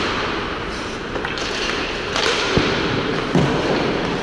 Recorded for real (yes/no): no